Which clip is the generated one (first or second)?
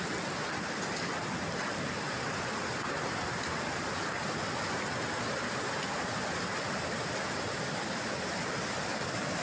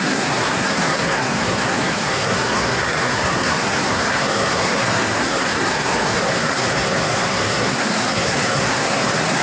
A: second